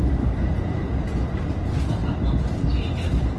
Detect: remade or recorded recorded